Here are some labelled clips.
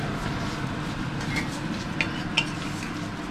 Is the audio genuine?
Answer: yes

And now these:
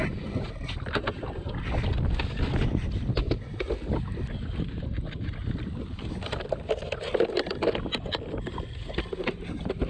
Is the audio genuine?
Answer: yes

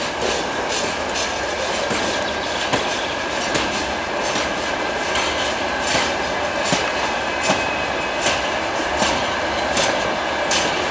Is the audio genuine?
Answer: yes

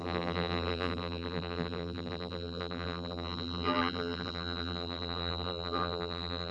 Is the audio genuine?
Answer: no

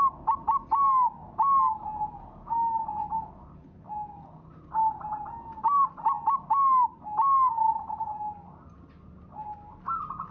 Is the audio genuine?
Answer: yes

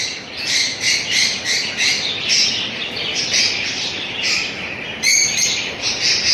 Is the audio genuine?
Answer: no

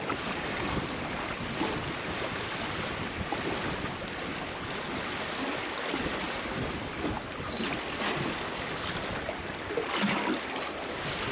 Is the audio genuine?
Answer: yes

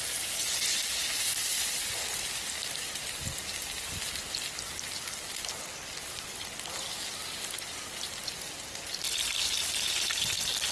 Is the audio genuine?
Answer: yes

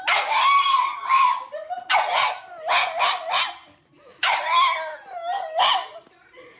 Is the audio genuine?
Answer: yes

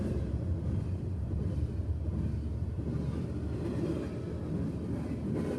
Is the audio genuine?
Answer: yes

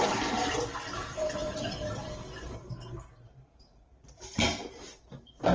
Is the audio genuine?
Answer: no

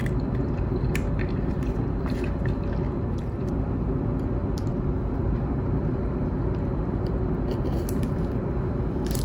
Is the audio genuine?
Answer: no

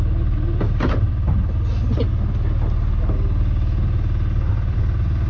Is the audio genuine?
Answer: yes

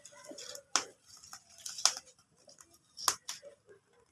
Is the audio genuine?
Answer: yes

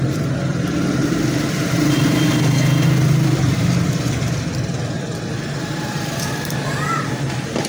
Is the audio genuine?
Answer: no